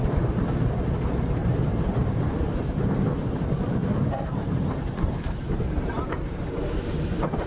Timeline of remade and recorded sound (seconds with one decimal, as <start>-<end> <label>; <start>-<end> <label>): 0.0-1.4 recorded; 1.4-2.3 remade; 2.3-3.8 recorded; 3.8-7.0 remade; 7.0-7.5 recorded